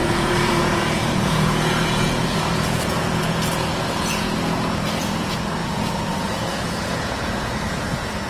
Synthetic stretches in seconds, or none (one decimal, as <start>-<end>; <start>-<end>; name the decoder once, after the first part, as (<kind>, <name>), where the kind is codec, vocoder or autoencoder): 0.0-8.3 (vocoder, Vocos)